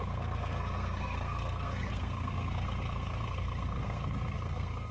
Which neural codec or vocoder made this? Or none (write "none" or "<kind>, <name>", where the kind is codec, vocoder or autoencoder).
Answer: codec, SNAC